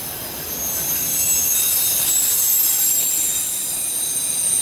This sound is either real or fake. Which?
real